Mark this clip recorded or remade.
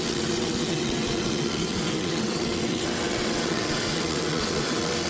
remade